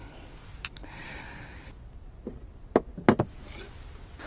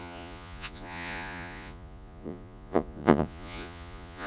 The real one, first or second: first